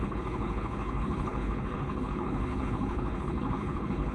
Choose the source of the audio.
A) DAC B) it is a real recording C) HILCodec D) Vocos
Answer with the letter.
C